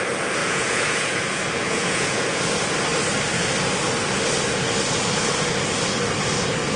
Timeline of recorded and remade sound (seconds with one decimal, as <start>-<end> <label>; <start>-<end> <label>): 0.0-0.4 recorded; 0.4-2.4 remade; 2.4-6.8 recorded